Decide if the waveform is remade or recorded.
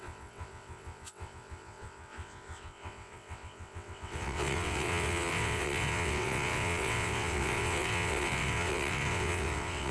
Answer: remade